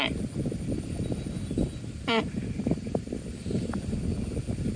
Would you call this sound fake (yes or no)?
no